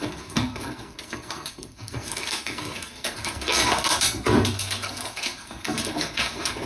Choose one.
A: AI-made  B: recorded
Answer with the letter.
A